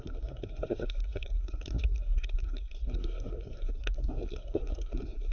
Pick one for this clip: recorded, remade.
remade